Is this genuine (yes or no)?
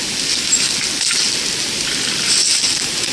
yes